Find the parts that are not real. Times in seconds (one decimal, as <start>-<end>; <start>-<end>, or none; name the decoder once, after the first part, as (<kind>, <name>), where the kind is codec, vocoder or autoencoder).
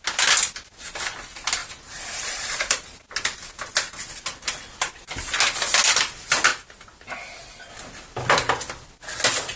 1.6-3.0 (vocoder, BigVGAN v2)